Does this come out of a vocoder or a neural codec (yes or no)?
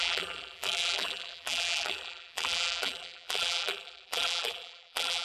yes